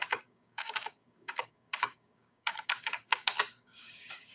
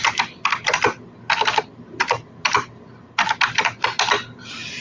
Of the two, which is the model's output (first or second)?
first